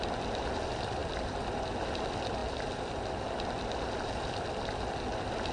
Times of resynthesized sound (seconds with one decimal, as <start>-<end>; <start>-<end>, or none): none